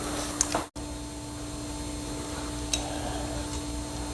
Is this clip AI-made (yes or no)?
no